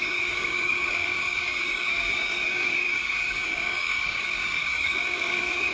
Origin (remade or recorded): remade